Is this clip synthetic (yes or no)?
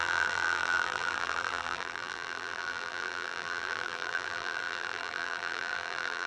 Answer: yes